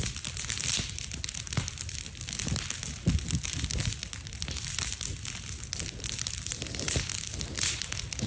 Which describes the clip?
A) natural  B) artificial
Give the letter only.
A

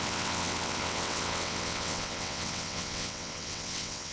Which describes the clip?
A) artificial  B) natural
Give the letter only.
A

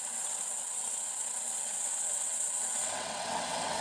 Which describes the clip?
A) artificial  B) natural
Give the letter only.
A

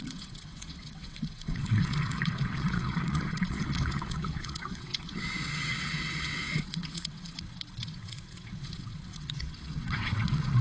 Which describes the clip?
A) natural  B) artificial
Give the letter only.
B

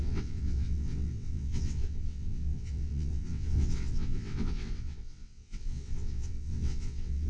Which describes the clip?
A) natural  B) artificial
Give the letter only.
B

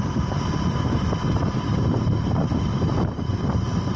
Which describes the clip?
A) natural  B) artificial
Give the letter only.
A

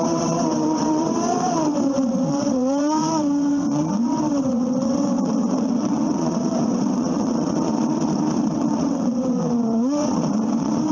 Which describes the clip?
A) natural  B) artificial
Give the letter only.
B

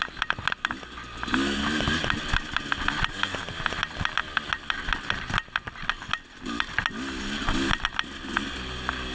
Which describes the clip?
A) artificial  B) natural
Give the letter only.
B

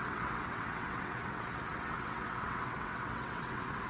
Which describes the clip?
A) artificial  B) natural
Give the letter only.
A